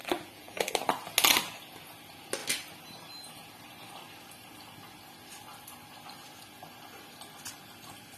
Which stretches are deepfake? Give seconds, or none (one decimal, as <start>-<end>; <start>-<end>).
0.0-0.7